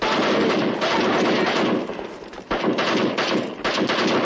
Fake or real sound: real